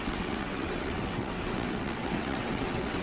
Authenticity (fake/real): fake